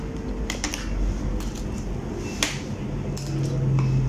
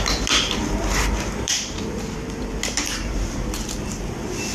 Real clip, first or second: first